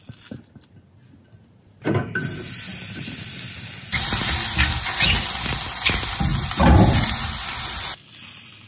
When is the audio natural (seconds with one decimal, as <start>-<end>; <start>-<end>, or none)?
0.0-2.7; 4.2-6.3; 7.1-8.7